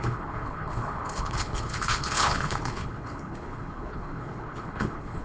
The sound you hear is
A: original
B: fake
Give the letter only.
B